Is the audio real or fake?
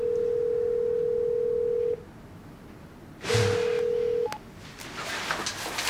real